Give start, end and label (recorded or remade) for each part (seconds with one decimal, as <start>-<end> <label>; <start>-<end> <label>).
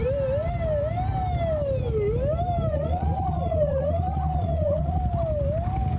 0.0-2.7 recorded; 2.7-5.0 remade; 5.0-6.0 recorded